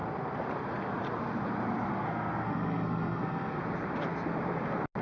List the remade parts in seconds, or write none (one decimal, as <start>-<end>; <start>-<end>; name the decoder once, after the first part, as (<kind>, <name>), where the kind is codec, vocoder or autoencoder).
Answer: 1.9-3.6 (codec, SNAC)